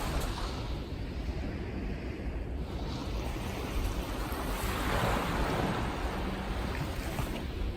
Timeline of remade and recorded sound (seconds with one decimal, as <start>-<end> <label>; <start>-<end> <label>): 0.0-7.8 recorded

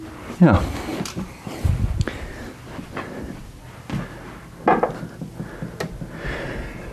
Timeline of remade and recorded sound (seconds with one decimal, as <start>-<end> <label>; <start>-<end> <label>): 0.0-0.9 recorded; 0.9-1.7 remade; 1.7-6.9 recorded